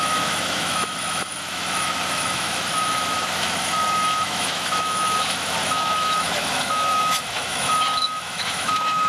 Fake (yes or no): yes